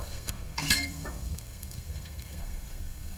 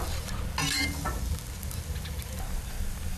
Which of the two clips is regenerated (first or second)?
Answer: first